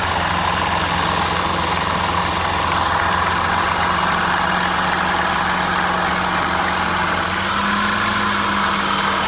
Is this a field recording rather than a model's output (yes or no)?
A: yes